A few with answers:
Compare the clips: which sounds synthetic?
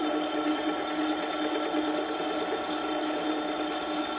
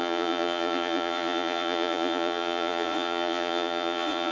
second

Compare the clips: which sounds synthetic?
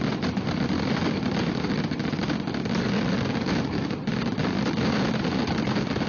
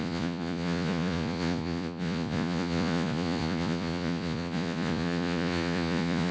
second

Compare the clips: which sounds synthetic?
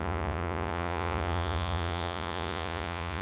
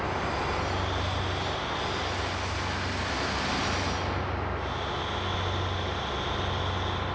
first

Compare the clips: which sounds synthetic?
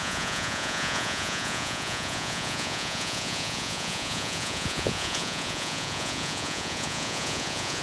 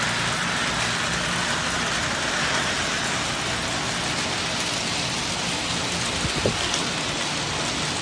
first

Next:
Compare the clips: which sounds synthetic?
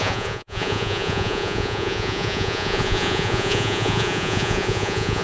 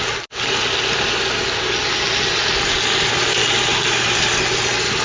first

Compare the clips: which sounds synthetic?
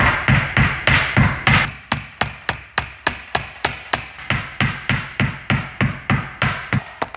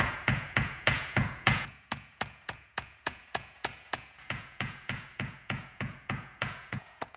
second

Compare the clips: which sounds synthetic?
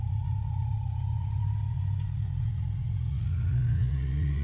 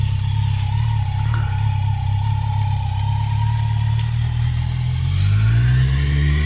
first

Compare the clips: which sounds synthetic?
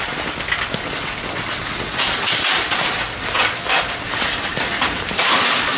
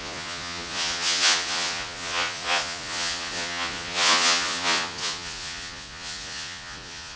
second